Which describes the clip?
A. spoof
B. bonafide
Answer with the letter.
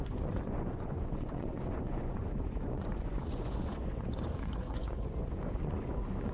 A